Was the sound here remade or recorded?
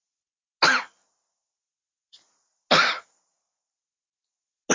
recorded